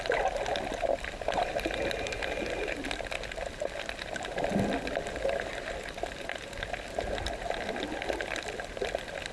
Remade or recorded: recorded